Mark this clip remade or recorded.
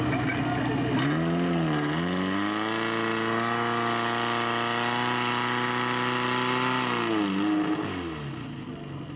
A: recorded